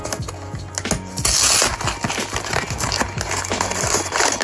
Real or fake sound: real